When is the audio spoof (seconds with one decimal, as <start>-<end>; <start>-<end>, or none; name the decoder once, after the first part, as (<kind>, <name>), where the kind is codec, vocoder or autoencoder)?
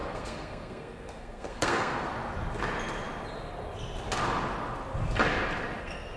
0.0-2.1 (codec, SNAC); 5.8-6.2